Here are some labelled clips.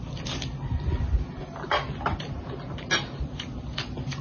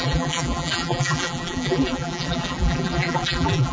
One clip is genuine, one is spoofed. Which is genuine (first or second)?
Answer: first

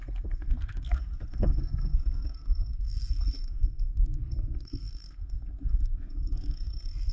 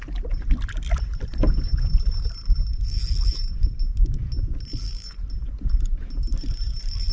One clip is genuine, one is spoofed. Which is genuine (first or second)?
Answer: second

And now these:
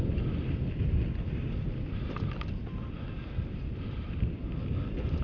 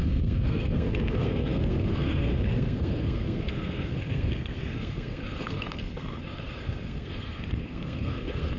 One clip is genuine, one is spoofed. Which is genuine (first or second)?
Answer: first